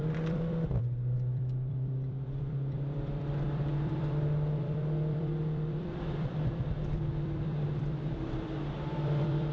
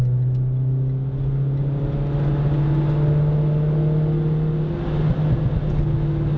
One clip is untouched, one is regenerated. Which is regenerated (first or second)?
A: first